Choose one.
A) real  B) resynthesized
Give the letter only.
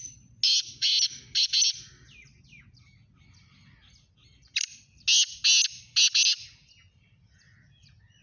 A